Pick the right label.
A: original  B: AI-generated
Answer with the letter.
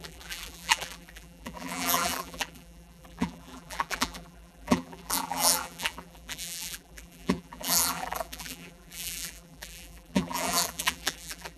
B